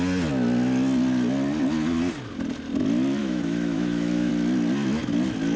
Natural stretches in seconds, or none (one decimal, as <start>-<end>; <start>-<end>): 0.0-3.2; 4.3-5.6